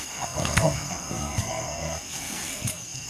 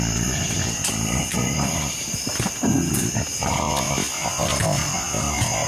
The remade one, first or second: first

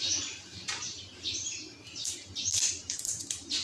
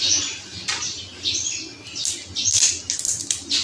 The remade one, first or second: first